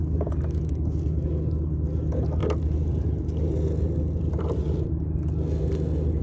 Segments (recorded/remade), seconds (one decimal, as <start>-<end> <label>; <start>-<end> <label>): 0.0-2.4 recorded; 2.4-5.0 remade; 5.0-6.2 recorded